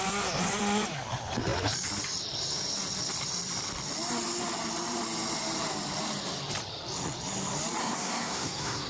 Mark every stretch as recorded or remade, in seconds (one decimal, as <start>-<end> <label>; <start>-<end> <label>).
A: 0.0-7.8 recorded; 7.8-8.9 remade